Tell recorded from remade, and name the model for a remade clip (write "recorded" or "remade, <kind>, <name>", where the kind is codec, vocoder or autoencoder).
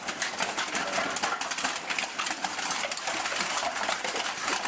recorded